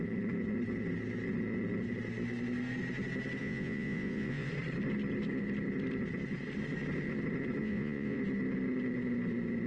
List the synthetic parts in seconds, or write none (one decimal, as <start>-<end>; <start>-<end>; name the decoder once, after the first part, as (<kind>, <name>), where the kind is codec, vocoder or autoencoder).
3.4-4.5 (vocoder, Vocos); 7.6-8.2